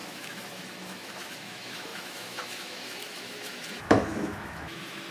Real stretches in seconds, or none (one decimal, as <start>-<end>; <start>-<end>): none